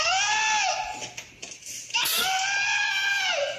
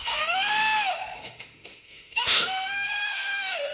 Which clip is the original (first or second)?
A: first